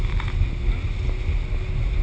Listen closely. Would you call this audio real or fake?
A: real